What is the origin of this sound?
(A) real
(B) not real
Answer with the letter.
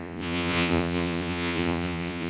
B